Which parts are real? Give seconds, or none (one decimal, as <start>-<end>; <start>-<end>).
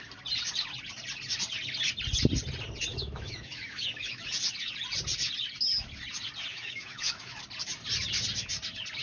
0.0-2.9; 4.3-6.5; 7.4-9.0